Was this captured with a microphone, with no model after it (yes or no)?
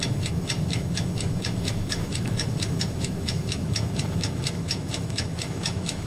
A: no